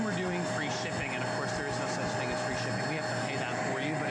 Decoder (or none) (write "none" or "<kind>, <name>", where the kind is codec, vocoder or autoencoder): none